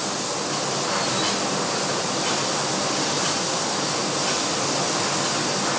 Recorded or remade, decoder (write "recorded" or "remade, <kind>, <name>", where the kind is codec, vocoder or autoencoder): recorded